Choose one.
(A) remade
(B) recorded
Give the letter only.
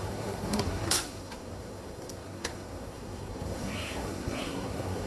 A